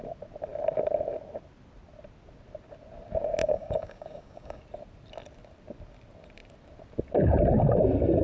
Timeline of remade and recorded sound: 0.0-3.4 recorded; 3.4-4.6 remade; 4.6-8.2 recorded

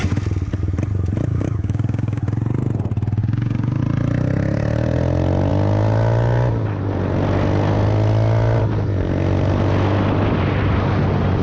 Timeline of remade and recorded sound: 0.0-1.3 recorded; 1.3-2.2 remade; 2.2-3.2 recorded; 3.2-3.8 remade; 3.8-11.4 recorded

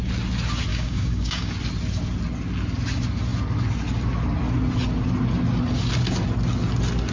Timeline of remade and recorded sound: 0.0-0.7 recorded; 0.7-1.5 remade; 1.5-7.1 recorded